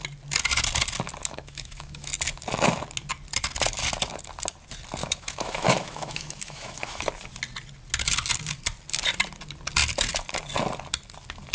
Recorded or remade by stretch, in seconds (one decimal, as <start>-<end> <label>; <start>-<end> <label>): 0.0-1.2 recorded; 1.2-2.1 remade; 2.1-5.0 recorded; 5.0-7.0 remade; 7.0-11.5 recorded